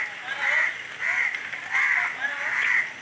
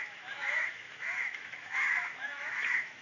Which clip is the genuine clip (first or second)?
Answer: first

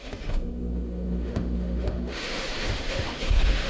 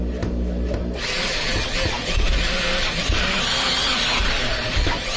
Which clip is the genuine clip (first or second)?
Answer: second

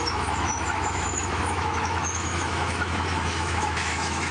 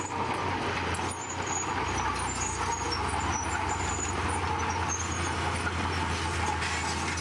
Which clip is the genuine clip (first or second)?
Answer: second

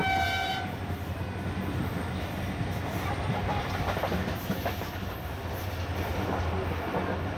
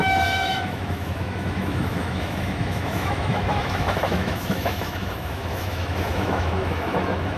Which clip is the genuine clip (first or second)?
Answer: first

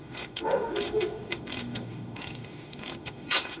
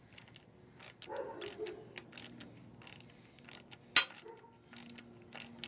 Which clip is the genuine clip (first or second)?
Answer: second